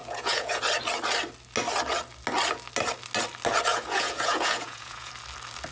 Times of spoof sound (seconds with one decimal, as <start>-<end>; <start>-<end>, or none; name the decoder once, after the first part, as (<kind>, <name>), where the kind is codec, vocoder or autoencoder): 0.0-0.6 (vocoder, Vocos); 3.7-5.1